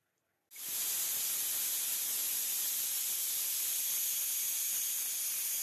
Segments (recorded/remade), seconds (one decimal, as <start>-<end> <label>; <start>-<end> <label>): 0.0-5.6 recorded